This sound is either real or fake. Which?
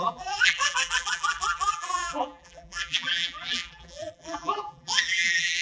fake